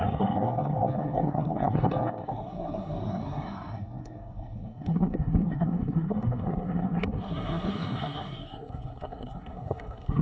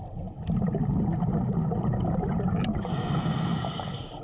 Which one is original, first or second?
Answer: second